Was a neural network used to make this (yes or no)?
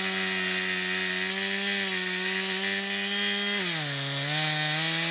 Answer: no